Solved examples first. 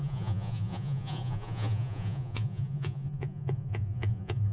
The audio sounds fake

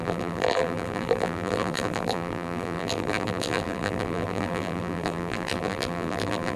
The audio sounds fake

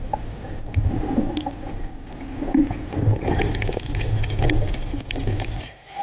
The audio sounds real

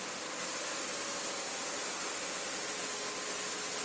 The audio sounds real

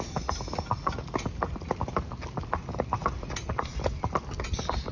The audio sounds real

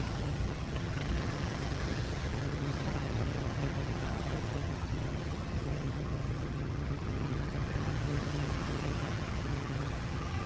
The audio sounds fake